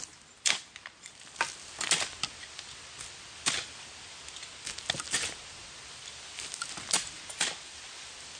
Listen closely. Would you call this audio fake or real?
real